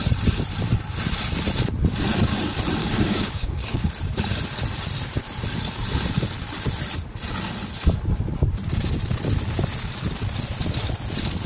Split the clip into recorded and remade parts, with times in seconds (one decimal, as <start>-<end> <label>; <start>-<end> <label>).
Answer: 0.0-2.8 recorded; 2.8-3.9 remade; 3.9-11.5 recorded